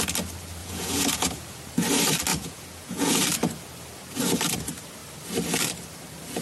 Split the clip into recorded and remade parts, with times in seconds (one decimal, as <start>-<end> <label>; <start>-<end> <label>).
0.0-0.6 recorded; 0.6-1.6 remade; 1.6-2.3 recorded; 2.3-3.1 remade; 3.1-6.4 recorded